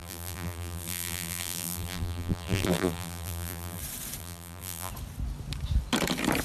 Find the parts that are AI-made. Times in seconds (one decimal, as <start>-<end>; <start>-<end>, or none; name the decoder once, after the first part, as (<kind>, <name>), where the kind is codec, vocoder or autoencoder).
0.0-3.8 (vocoder, BigVGAN v2); 4.2-4.9